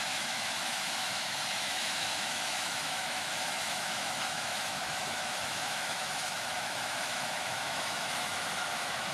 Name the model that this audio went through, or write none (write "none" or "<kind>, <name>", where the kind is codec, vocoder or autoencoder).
autoencoder, DAC-VAE